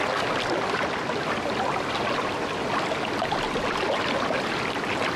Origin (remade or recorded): recorded